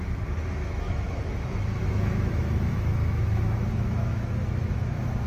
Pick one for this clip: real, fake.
fake